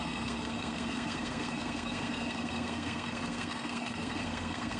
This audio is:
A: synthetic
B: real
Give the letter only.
A